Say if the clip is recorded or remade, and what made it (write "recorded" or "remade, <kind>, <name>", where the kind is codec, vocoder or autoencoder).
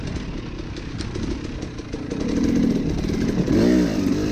recorded